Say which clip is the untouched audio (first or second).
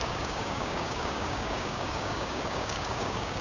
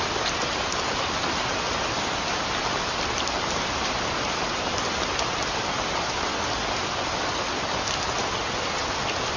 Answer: second